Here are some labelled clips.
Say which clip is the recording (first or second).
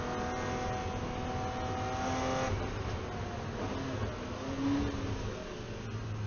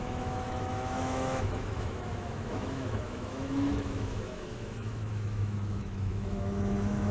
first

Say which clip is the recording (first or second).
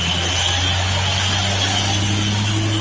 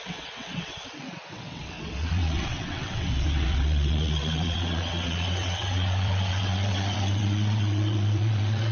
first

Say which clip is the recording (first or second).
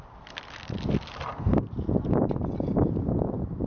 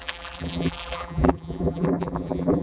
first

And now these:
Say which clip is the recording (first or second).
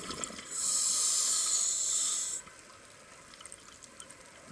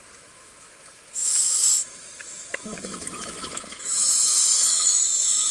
first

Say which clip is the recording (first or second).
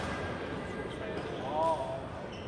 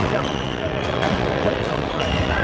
first